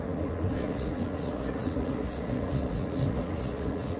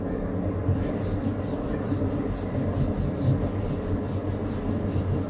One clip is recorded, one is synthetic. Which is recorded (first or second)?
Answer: second